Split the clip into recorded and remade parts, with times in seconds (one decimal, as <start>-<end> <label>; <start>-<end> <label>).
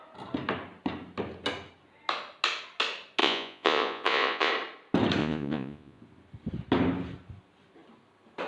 0.0-3.2 recorded; 3.2-4.5 remade; 4.5-5.2 recorded; 5.2-6.0 remade; 6.0-8.5 recorded